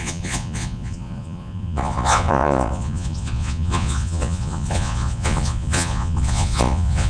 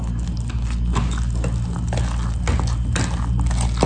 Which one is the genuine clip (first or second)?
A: second